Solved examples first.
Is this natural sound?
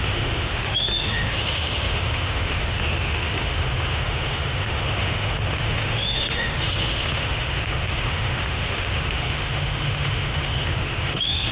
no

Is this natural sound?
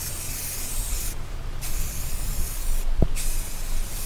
yes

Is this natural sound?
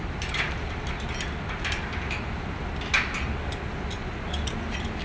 yes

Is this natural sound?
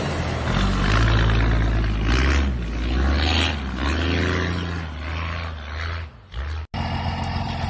yes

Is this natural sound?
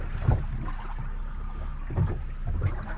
yes